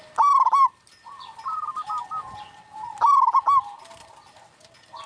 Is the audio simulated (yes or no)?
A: no